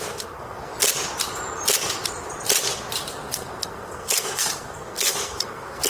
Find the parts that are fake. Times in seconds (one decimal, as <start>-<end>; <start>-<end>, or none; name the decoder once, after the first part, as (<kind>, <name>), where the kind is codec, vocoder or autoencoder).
0.0-0.7 (codec, SNAC); 3.1-5.9